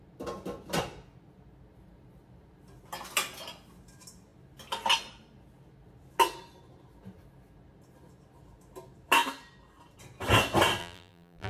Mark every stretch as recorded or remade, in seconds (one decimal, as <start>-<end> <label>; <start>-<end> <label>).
0.0-10.8 recorded; 10.8-11.5 remade